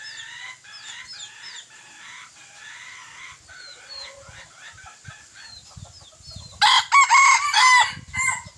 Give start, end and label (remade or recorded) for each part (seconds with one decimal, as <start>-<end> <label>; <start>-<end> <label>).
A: 0.0-8.6 recorded